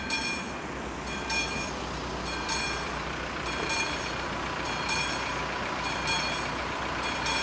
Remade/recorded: remade